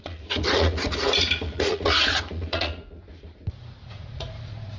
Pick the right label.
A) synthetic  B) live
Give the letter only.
A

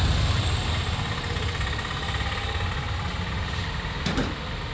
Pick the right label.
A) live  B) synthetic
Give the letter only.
A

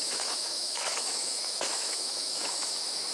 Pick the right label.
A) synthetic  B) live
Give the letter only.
A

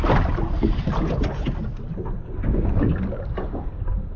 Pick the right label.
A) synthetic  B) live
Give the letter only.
B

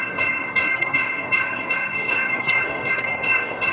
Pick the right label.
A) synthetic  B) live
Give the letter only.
A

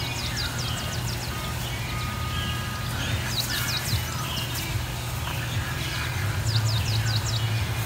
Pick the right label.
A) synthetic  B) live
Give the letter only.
B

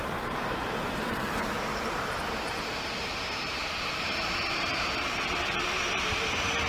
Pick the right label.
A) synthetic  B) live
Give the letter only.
A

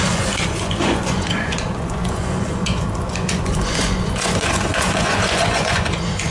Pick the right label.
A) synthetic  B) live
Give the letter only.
A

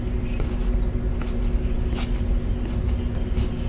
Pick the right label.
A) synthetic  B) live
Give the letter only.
B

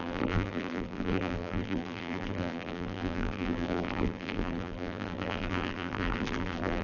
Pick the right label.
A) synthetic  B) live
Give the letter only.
A